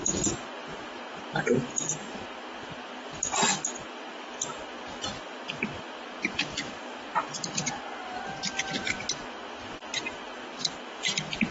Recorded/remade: recorded